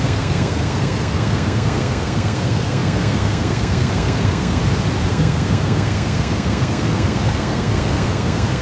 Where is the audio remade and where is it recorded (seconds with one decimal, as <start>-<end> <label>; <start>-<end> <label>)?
0.0-4.6 remade; 4.6-5.1 recorded; 5.1-8.6 remade